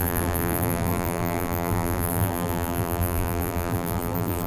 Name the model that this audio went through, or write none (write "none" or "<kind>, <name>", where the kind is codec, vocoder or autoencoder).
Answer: vocoder, BigVGAN v2